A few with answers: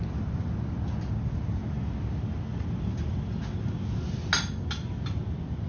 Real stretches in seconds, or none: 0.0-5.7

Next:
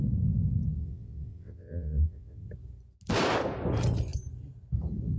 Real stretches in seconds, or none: 0.0-0.8; 2.5-5.2

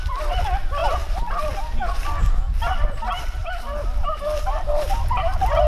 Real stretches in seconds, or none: 0.0-5.7

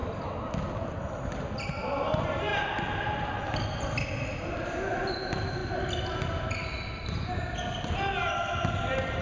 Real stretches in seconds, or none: 0.0-9.2

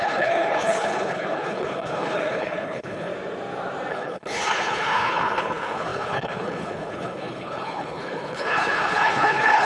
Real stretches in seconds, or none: 3.1-3.9

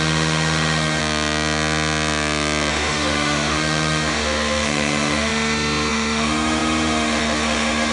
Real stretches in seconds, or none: 1.0-2.7

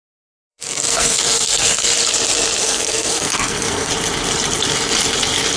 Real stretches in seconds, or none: 0.0-0.5; 1.9-2.6; 3.9-5.6

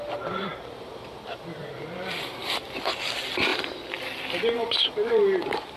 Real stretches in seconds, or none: 0.0-0.5; 2.2-4.6; 5.2-5.8